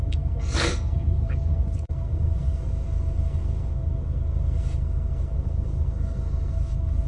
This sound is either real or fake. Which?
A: fake